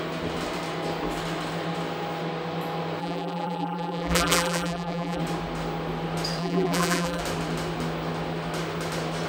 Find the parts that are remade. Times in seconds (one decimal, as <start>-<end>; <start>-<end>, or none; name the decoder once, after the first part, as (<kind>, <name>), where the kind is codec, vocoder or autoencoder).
3.0-5.2 (vocoder, BigVGAN v2); 6.4-7.2